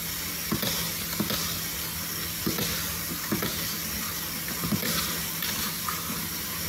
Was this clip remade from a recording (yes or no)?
no